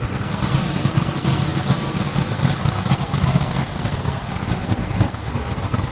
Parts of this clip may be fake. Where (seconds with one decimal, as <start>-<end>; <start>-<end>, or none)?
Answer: 0.0-5.9